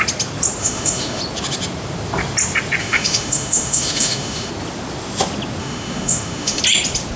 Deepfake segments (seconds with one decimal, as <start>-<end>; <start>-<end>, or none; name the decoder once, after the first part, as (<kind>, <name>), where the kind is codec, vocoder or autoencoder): 0.6-1.2 (autoencoder, DAC-VAE); 2.8-4.5; 5.6-6.6